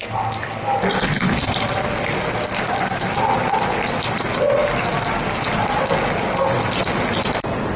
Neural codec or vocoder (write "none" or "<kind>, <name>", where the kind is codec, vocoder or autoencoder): none